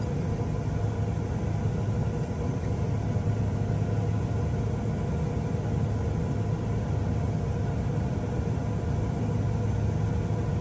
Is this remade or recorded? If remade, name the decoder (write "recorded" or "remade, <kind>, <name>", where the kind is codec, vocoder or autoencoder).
recorded